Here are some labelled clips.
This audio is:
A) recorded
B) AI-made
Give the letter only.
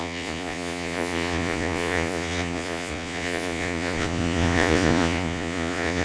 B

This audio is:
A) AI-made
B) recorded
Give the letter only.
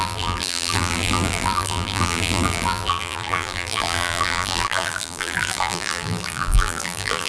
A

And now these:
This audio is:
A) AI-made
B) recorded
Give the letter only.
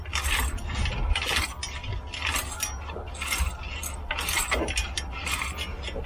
B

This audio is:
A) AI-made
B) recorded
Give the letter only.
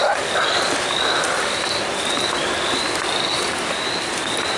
B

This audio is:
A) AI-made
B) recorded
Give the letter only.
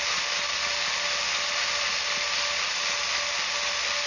B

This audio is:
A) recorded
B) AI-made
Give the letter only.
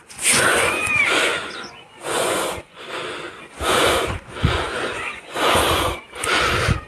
B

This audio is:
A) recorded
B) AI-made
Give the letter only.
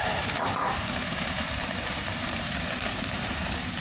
B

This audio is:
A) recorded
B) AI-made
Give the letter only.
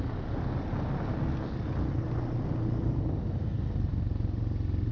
A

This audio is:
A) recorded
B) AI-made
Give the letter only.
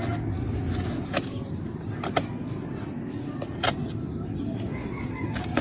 A